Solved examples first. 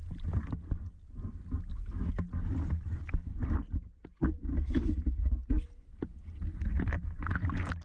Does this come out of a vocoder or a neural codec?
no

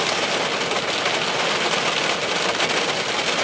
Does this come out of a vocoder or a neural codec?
no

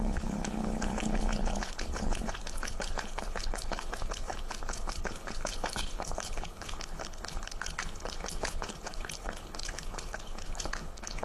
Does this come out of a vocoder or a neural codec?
yes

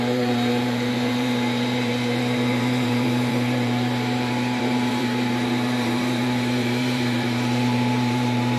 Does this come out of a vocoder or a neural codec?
yes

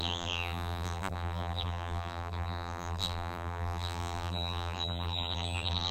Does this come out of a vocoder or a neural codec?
yes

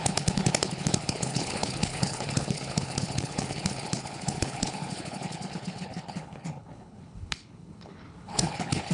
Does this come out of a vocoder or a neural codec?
yes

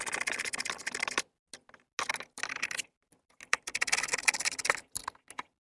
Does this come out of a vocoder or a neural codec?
no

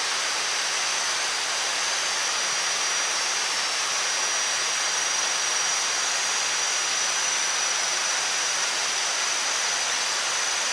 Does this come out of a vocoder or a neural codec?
no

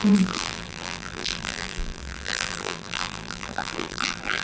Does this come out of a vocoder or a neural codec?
yes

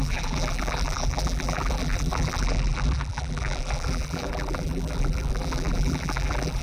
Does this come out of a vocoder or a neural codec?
yes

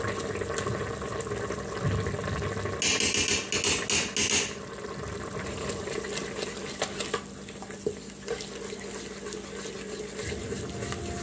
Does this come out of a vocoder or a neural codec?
no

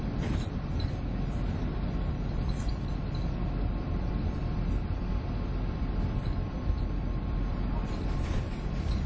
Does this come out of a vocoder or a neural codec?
yes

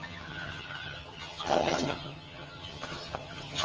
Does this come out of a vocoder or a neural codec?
yes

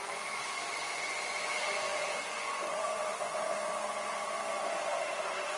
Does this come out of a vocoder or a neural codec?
yes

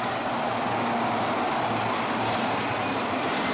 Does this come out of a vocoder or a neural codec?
no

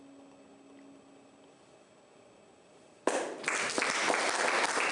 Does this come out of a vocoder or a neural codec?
no